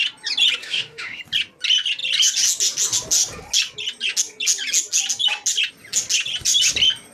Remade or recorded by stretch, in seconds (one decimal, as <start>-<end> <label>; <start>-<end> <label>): 0.0-0.6 recorded; 0.6-1.2 remade; 1.2-7.1 recorded